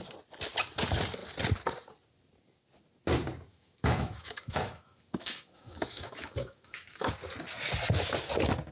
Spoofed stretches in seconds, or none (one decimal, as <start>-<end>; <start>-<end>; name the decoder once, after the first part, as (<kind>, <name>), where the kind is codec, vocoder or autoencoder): 3.5-7.1 (autoencoder, DAC-VAE)

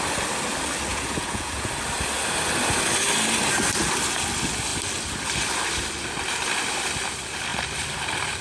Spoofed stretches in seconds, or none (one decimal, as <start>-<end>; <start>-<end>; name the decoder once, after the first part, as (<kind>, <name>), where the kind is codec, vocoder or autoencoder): 0.9-1.7 (vocoder, Vocos)

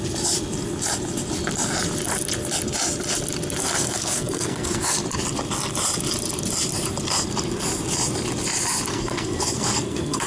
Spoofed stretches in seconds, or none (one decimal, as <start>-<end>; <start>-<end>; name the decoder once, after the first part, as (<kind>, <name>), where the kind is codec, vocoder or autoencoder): 3.6-4.9 (codec, SNAC); 8.9-10.3

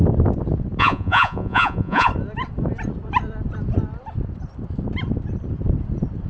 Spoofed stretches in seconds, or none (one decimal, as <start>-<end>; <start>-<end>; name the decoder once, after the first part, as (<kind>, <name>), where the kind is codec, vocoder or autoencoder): 0.8-2.1 (vocoder, Vocos)

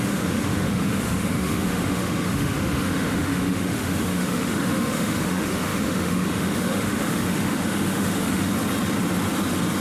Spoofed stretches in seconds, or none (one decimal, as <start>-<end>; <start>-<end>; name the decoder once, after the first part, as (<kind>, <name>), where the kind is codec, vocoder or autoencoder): 0.0-8.5 (autoencoder, DAC-VAE)

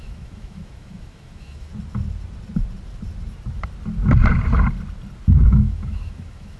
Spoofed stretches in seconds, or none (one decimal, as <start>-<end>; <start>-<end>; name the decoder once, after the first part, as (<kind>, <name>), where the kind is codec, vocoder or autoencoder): 0.0-1.7 (autoencoder, DAC-VAE); 5.5-6.6

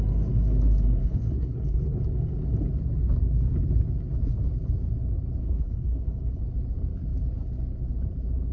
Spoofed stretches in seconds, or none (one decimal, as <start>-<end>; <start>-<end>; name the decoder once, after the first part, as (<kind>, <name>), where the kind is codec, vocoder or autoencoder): 1.0-2.0 (codec, HILCodec); 5.4-6.4